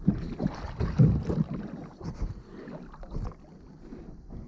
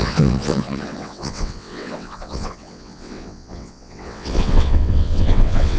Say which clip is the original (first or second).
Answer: first